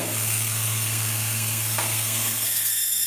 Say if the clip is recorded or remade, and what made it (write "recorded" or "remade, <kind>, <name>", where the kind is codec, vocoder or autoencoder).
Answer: remade, codec, SNAC